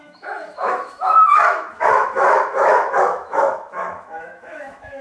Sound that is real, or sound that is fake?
fake